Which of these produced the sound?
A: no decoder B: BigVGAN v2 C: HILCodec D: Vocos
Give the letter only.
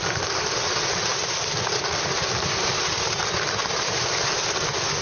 A